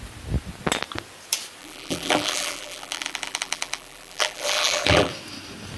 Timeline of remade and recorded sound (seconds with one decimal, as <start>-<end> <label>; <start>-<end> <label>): 0.0-1.6 recorded; 1.6-5.1 remade; 5.1-5.8 recorded